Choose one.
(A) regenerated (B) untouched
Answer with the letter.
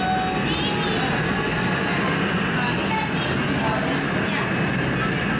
B